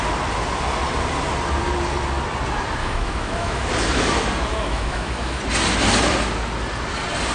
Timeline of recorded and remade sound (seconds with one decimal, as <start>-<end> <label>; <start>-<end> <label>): 0.0-2.8 recorded; 2.8-3.7 remade; 3.7-4.5 recorded; 4.5-5.4 remade; 5.4-7.3 recorded